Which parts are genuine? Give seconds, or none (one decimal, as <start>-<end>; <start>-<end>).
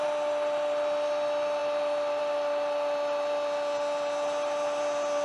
0.0-5.2